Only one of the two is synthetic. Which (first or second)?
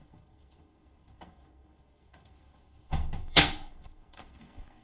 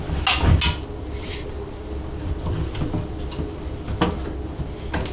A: first